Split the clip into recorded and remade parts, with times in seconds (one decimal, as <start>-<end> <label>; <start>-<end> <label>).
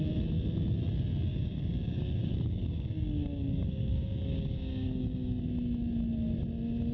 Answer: 0.0-1.3 recorded; 1.3-5.4 remade; 5.4-6.9 recorded